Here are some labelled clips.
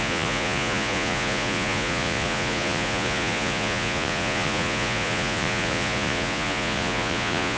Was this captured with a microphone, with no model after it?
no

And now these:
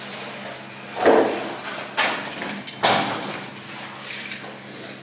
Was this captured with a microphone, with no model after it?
yes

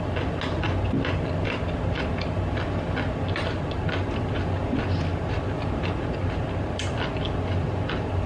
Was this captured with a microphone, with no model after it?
yes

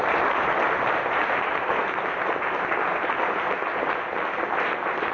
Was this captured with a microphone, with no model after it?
yes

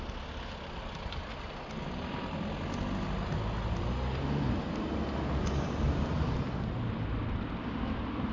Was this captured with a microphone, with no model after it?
yes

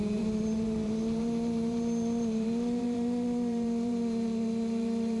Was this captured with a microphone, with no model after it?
no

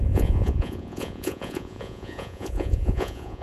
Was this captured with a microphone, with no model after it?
no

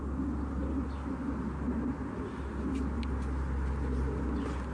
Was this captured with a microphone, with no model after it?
yes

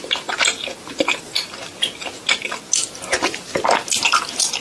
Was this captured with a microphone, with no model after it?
yes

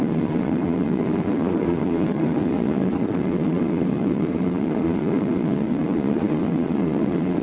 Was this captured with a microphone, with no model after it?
no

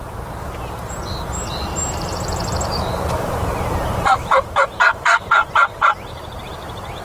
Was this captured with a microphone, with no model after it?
no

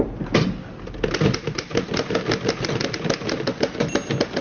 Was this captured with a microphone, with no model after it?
yes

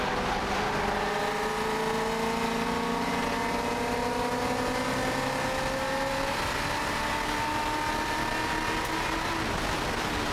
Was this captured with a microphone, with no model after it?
yes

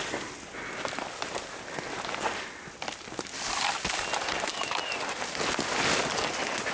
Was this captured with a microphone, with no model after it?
yes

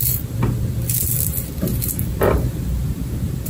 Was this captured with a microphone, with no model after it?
yes